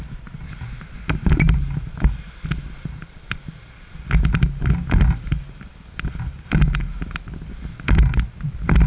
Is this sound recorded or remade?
recorded